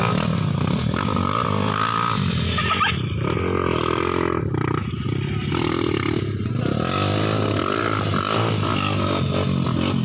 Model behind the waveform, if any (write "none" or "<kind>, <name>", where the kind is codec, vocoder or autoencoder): none